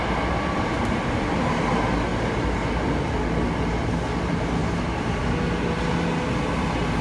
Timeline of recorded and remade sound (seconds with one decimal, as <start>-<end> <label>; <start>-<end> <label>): 0.0-7.0 recorded